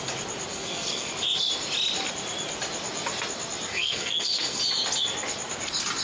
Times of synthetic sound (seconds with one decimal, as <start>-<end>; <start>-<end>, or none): 0.5-1.1; 3.7-4.6